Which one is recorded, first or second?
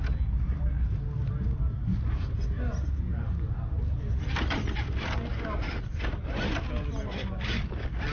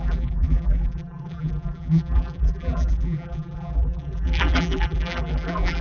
first